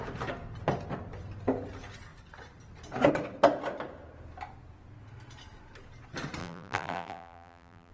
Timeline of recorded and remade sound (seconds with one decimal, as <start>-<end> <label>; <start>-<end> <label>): 0.0-6.4 recorded; 6.4-7.9 remade